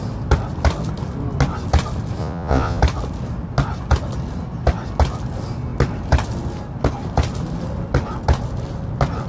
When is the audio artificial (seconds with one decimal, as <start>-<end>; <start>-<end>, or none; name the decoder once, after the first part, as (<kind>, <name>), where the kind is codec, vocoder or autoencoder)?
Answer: 2.2-2.8 (vocoder, Vocos)